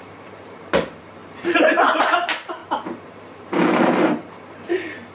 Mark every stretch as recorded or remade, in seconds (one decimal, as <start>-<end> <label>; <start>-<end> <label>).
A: 0.0-5.1 remade